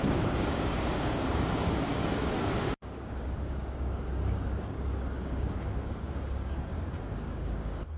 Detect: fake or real fake